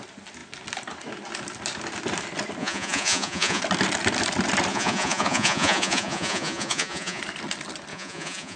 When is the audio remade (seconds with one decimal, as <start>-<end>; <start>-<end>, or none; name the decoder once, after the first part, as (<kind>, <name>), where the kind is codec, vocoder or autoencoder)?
2.6-3.6 (vocoder, Vocos); 4.7-7.2; 7.9-8.6